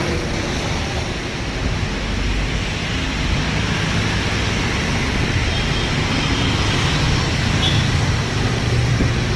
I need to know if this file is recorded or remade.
recorded